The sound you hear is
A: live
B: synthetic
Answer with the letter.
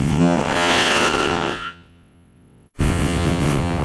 B